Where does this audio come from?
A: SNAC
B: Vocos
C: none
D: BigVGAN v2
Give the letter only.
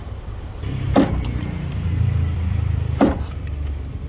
D